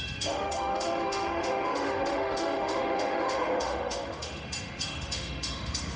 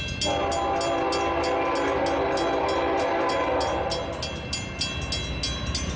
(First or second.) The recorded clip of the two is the second